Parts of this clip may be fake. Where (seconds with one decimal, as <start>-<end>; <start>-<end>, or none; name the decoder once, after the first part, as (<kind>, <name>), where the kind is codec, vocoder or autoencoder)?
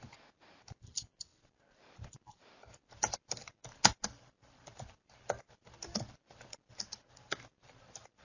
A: none